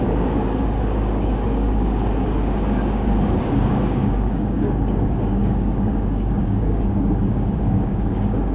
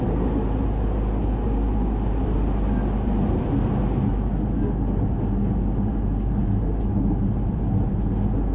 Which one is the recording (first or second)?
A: second